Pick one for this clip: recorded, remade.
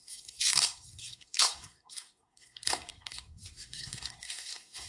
remade